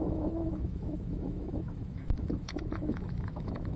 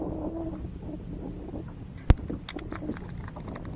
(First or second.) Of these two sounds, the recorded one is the second